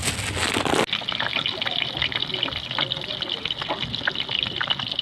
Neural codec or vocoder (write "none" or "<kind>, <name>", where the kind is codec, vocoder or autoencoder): none